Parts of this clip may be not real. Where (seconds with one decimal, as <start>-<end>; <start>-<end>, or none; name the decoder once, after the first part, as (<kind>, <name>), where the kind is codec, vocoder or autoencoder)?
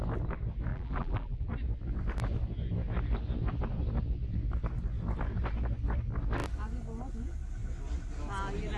0.7-1.5 (vocoder, BigVGAN v2)